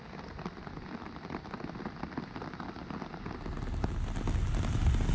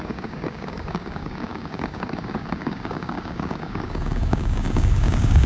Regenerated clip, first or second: second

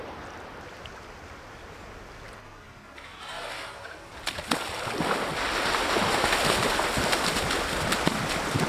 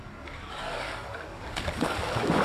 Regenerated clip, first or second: second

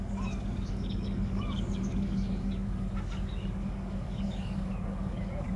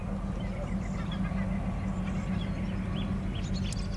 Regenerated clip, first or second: first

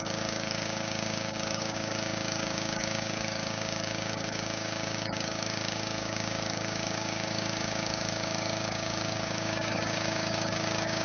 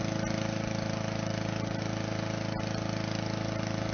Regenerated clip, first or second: first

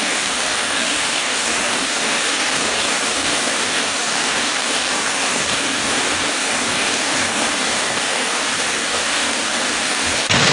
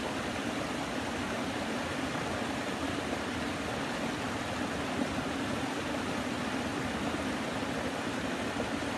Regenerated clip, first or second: first